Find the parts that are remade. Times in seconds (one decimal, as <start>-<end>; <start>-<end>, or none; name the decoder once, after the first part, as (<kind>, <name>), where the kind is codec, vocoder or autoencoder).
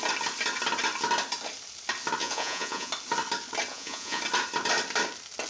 2.2-2.9 (vocoder, Vocos); 3.7-4.2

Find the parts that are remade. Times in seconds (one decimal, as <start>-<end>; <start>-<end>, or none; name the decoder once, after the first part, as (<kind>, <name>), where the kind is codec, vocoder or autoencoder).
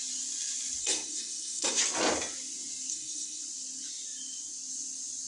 0.8-1.8 (codec, SNAC); 2.9-3.4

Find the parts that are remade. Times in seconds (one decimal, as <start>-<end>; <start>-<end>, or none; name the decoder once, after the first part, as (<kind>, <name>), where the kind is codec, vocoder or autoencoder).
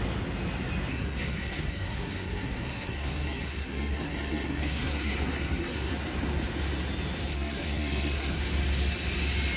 0.9-5.9 (codec, SNAC); 7.3-8.4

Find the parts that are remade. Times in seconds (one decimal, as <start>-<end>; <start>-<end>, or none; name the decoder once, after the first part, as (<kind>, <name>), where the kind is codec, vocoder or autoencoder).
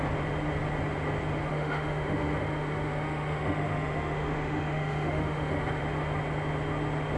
1.5-5.8 (autoencoder, DAC-VAE)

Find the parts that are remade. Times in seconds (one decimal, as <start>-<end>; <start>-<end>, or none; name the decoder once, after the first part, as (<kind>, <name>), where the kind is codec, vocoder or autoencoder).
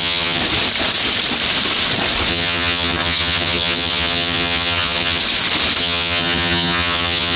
0.0-0.4 (vocoder, HiFi-GAN); 2.3-5.2; 5.8-7.4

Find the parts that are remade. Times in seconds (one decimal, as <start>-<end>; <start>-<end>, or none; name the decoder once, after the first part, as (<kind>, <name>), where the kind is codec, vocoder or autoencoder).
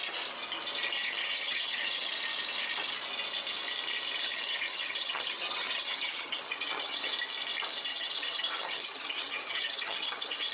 1.0-2.1 (vocoder, HiFi-GAN); 4.3-7.1; 7.9-10.5